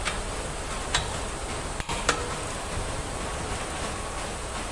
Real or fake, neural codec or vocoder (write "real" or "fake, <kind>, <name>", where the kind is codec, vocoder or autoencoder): real